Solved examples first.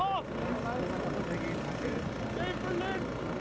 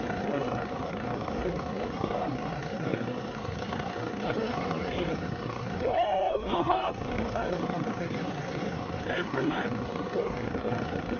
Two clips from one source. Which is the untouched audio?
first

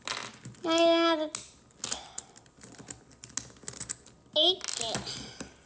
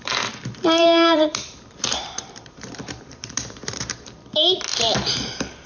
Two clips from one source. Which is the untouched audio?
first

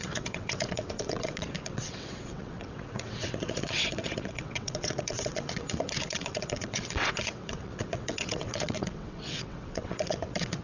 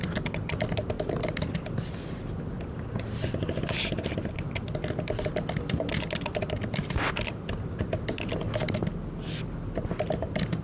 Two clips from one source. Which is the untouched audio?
second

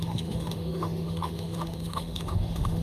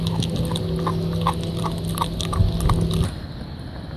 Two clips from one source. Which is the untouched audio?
second